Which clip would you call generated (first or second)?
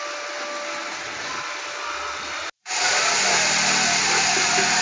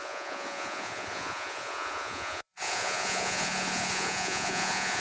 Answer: second